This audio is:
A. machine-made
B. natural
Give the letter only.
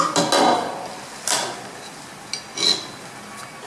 B